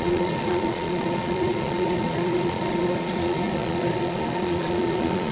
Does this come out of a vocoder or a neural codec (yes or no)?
yes